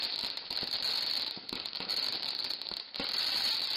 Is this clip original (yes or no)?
no